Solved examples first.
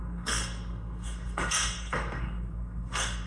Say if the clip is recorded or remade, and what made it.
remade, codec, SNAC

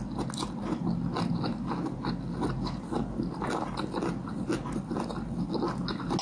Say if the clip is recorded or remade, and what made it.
recorded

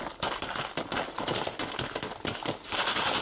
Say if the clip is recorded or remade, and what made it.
recorded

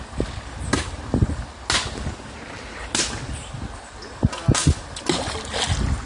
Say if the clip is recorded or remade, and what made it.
recorded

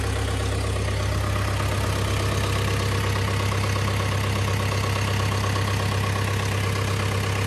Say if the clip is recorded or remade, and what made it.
recorded